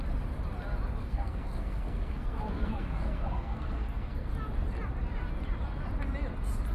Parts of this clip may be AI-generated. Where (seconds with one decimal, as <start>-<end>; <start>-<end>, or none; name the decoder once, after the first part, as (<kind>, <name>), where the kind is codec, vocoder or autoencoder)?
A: 1.0-4.3 (codec, SNAC)